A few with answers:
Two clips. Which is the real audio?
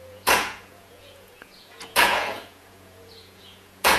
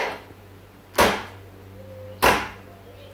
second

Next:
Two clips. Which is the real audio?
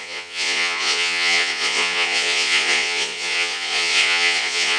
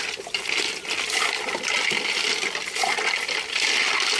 second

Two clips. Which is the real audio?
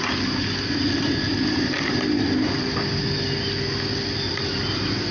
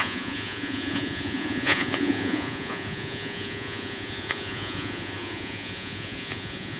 first